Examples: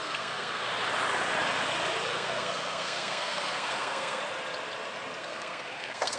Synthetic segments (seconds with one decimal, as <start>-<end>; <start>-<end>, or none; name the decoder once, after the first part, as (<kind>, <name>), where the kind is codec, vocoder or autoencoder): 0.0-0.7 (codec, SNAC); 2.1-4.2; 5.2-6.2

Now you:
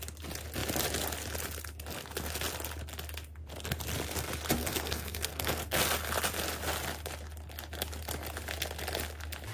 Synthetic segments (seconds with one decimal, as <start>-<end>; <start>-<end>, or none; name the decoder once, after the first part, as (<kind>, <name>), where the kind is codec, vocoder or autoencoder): 4.6-5.8 (codec, SNAC)

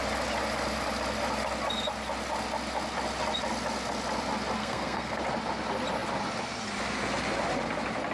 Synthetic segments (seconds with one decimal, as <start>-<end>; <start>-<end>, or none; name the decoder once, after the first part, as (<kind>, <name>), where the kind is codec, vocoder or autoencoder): 4.6-5.2 (codec, SNAC)

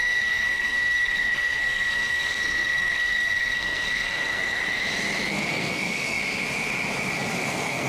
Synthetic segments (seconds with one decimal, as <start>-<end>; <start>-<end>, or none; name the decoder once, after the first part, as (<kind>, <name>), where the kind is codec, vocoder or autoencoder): 0.0-4.6 (codec, SNAC); 5.3-6.2; 7.4-7.9

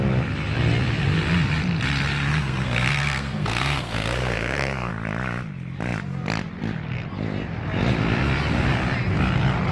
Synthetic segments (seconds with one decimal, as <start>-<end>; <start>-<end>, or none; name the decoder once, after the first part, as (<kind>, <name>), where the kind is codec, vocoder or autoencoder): 2.3-4.9 (codec, SNAC)